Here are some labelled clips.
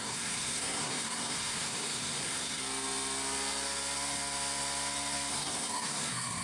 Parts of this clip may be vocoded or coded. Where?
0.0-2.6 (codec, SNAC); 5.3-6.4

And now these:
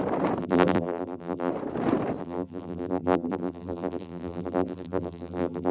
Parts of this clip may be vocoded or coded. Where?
0.4-1.5 (vocoder, BigVGAN v2); 2.2-5.7

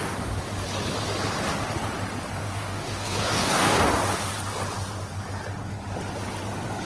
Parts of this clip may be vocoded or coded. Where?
2.4-3.8 (codec, DAC)

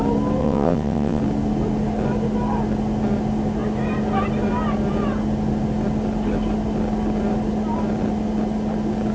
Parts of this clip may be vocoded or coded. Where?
0.4-1.2 (vocoder, WaveNeXt)

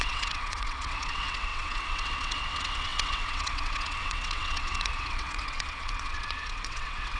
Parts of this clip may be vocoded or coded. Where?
0.0-7.2 (vocoder, WaveNeXt)